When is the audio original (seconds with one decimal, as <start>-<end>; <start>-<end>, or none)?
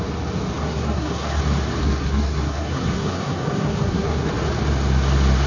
0.0-0.6; 1.4-1.8; 4.3-5.5